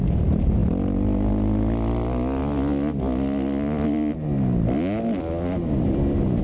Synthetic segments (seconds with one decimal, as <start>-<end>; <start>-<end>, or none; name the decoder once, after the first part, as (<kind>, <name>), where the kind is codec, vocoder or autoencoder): none